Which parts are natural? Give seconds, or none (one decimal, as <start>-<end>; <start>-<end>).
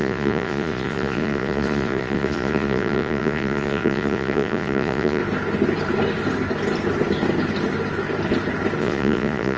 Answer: 5.2-8.8